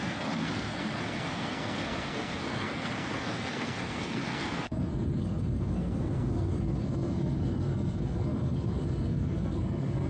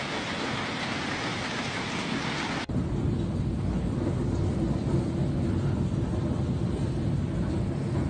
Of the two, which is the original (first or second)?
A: second